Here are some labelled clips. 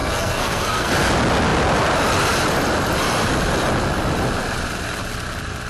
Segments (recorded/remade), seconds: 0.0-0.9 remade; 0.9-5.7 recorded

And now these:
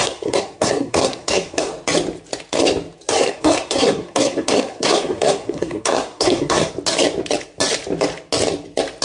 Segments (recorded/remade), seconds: 0.0-1.7 remade; 1.7-3.2 recorded; 3.2-6.7 remade; 6.7-9.0 recorded

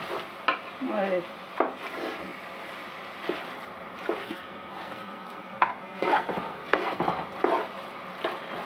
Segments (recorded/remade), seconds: 0.0-4.2 recorded; 4.2-7.0 remade; 7.0-8.7 recorded

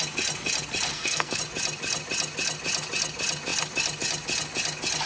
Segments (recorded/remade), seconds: 0.0-0.9 recorded; 0.9-1.4 remade; 1.4-5.1 recorded